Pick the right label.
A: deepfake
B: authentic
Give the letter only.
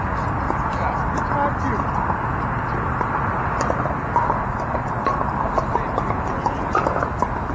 B